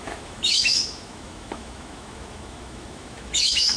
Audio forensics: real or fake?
fake